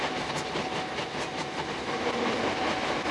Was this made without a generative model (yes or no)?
yes